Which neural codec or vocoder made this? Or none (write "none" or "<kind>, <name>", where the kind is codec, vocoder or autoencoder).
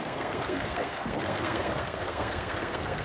codec, SNAC